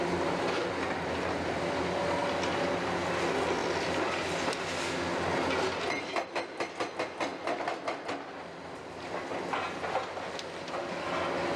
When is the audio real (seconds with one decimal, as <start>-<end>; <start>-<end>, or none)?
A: 0.0-11.6